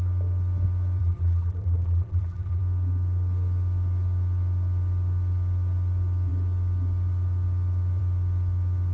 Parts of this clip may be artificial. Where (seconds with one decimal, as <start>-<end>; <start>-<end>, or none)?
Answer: 1.0-2.6